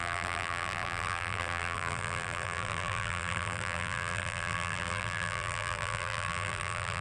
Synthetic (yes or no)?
yes